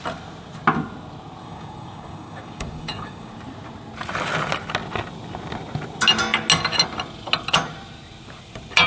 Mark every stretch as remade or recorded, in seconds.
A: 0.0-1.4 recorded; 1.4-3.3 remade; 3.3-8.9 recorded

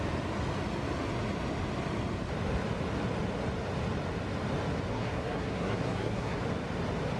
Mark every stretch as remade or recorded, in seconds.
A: 0.0-4.9 recorded; 4.9-6.4 remade; 6.4-7.2 recorded

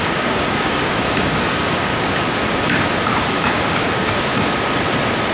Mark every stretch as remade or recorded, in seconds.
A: 0.0-1.9 remade; 1.9-3.3 recorded; 3.3-4.3 remade; 4.3-5.3 recorded

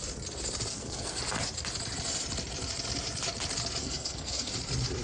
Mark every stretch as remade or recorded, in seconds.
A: 0.0-0.7 recorded; 0.7-1.2 remade; 1.2-3.8 recorded; 3.8-4.5 remade; 4.5-5.0 recorded

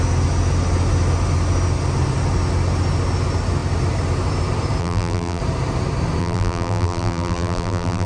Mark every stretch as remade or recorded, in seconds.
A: 0.0-4.8 recorded; 4.8-5.4 remade; 5.4-6.2 recorded; 6.2-8.1 remade

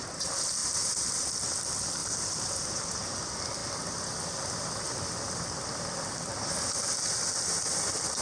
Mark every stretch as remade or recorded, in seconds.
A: 0.0-0.6 recorded; 0.6-1.2 remade; 1.2-2.0 recorded; 2.0-2.8 remade; 2.8-8.2 recorded

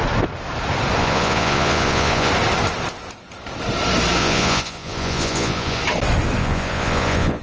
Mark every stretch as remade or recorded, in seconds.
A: 0.0-1.0 recorded; 1.0-2.3 remade; 2.3-4.2 recorded; 4.2-5.8 remade; 5.8-6.4 recorded; 6.4-7.4 remade